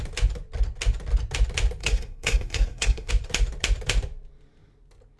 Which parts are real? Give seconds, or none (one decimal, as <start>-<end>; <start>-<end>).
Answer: 0.0-1.8; 3.1-5.2